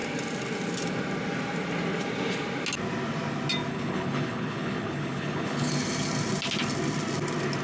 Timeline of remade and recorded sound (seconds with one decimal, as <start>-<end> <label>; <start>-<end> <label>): 0.0-3.7 recorded; 3.7-5.7 remade; 5.7-7.6 recorded